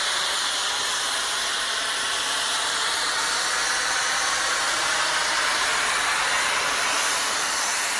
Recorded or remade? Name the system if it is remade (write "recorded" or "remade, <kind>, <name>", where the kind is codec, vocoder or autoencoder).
recorded